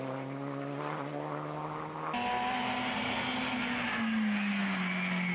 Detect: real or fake real